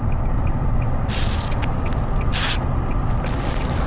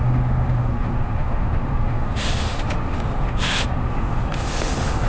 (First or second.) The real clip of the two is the first